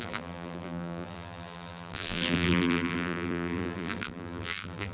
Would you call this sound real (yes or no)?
no